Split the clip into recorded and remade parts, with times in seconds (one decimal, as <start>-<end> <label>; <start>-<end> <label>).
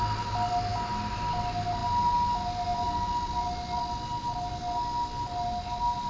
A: 0.0-6.1 recorded